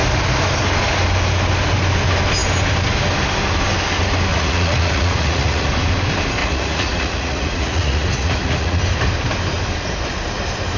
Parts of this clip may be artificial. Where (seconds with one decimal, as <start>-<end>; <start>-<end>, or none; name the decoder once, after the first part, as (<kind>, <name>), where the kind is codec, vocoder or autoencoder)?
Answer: 4.3-5.7 (vocoder, Vocos); 6.4-8.8